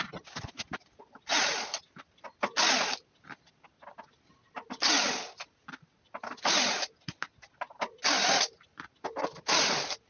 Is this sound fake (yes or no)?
no